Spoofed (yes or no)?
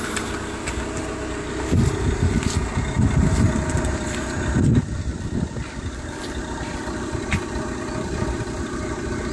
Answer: no